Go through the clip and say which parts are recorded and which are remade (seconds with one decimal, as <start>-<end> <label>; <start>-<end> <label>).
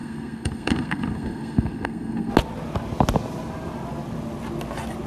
0.0-2.3 remade; 2.3-5.1 recorded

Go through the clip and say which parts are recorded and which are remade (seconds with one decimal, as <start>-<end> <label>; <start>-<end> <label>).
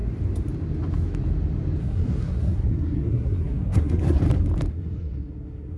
0.0-1.8 recorded; 1.8-4.2 remade; 4.2-4.7 recorded; 4.7-5.8 remade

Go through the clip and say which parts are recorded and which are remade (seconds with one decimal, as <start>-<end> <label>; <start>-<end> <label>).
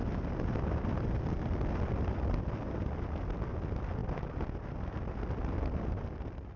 0.0-6.6 recorded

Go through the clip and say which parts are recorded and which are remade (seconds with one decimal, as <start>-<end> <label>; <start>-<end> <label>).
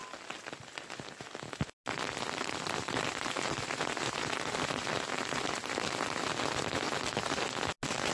0.0-8.1 recorded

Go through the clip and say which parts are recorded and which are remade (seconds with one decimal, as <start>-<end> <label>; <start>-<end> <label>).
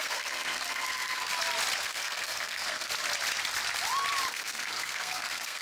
0.0-1.3 remade; 1.3-1.8 recorded; 1.8-2.9 remade; 2.9-4.3 recorded; 4.3-5.6 remade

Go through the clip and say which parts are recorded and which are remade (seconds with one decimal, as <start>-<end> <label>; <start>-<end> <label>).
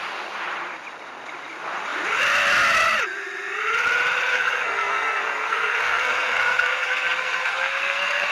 0.0-4.3 recorded; 4.3-8.3 remade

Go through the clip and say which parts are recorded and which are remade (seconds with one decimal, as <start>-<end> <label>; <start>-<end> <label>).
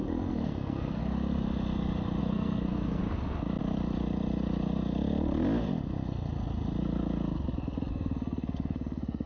0.0-1.0 remade; 1.0-2.2 recorded; 2.2-3.0 remade; 3.0-7.9 recorded; 7.9-9.3 remade